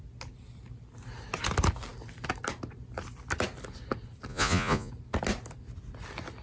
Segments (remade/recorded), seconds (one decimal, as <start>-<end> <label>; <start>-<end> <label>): 0.0-4.3 recorded; 4.3-4.9 remade; 4.9-6.4 recorded